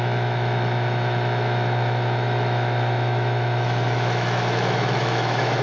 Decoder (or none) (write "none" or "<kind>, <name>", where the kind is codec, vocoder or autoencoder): autoencoder, DAC-VAE